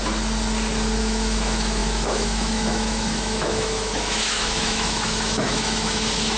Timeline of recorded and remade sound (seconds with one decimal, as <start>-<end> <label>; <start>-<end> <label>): 0.0-1.0 recorded; 1.0-6.4 remade